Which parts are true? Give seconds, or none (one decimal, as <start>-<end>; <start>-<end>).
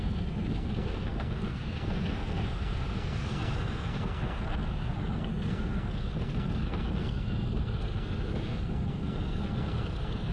none